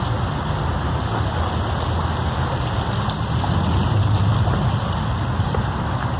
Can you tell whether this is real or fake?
real